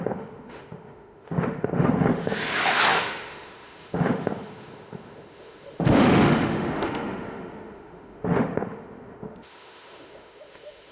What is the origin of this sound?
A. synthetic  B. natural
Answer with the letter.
A